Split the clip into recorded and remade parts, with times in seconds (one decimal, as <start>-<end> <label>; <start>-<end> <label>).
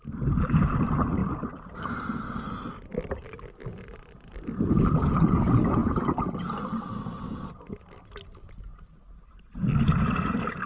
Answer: 0.0-2.9 recorded; 2.9-4.6 remade; 4.6-10.7 recorded